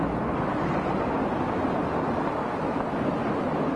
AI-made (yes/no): no